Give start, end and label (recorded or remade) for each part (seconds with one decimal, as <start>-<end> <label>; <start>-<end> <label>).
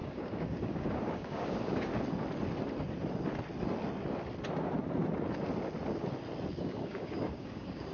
0.0-1.9 remade; 1.9-6.6 recorded; 6.6-7.9 remade